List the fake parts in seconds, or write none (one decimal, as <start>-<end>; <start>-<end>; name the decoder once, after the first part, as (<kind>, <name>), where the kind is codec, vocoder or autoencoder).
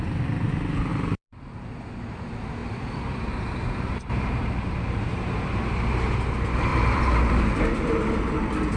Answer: 0.9-1.8 (vocoder, BigVGAN v2); 2.6-5.3; 6.7-7.6